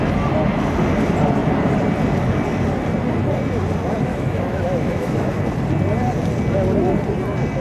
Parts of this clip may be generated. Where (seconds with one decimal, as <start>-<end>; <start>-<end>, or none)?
4.1-5.4